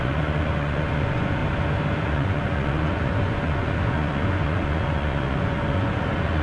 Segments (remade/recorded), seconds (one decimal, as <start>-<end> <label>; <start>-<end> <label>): 0.0-1.4 remade; 1.4-2.0 recorded; 2.0-6.4 remade